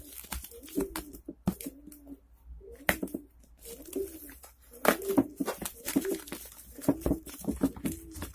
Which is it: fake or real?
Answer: real